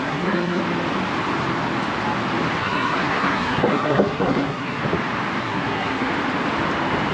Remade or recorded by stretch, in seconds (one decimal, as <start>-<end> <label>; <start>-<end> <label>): 0.0-0.6 remade; 0.6-2.6 recorded; 2.6-4.8 remade; 4.8-5.4 recorded; 5.4-6.1 remade; 6.1-7.1 recorded

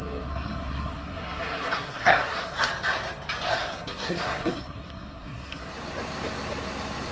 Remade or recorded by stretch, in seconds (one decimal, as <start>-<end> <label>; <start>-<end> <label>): 0.0-2.7 remade; 2.7-3.5 recorded; 3.5-5.7 remade; 5.7-7.1 recorded

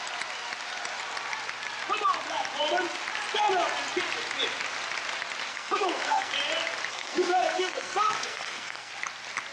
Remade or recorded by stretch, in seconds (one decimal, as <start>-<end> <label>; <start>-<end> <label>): 0.0-5.5 recorded; 5.5-6.3 remade; 6.3-6.9 recorded; 6.9-8.9 remade; 8.9-9.5 recorded